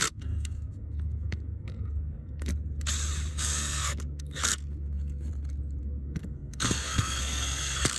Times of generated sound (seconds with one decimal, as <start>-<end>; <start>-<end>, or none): 0.0-2.5; 3.3-5.3; 5.8-8.0